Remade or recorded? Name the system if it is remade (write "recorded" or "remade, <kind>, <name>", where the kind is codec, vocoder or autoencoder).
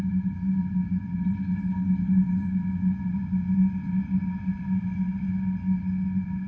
recorded